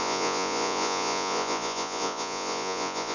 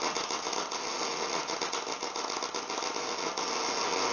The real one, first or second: second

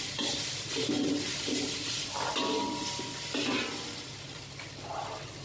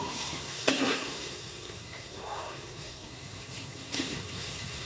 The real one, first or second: first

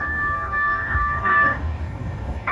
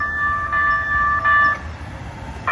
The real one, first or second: second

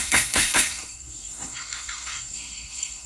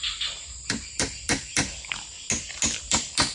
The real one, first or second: second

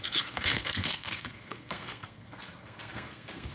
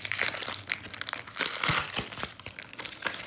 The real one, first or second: second